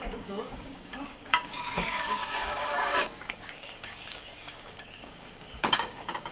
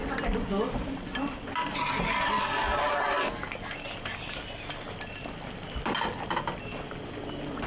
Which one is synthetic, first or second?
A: first